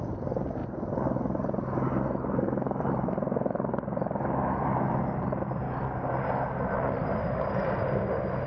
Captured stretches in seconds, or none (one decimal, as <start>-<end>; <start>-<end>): 0.0-8.5